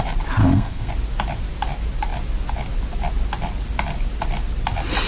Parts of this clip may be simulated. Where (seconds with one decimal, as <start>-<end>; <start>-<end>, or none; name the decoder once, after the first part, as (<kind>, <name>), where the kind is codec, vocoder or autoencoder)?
0.4-0.9 (codec, SNAC)